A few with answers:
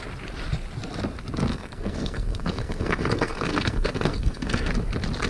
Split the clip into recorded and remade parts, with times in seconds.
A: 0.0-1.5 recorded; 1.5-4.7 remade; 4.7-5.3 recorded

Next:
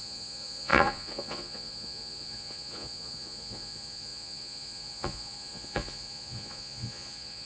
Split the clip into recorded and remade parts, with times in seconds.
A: 0.0-7.5 remade

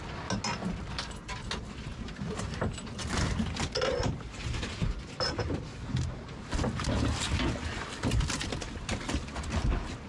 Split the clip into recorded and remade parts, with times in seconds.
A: 0.0-10.1 recorded

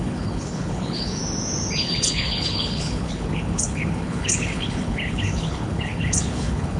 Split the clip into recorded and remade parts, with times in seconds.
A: 0.0-1.2 remade; 1.2-1.8 recorded; 1.8-6.8 remade

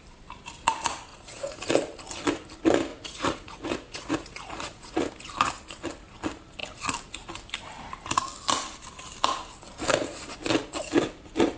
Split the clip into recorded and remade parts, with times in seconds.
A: 0.0-1.1 recorded; 1.1-1.6 remade; 1.6-2.9 recorded; 2.9-5.1 remade; 5.1-11.6 recorded